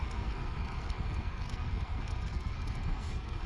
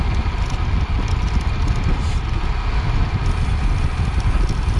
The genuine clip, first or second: second